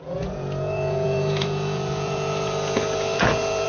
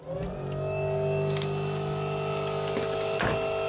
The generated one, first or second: first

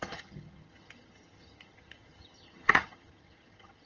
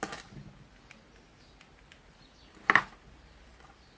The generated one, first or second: first